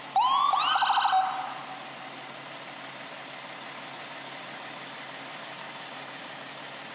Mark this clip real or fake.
real